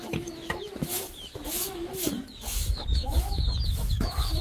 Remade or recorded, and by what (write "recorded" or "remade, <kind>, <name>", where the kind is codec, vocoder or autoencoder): remade, autoencoder, DAC-VAE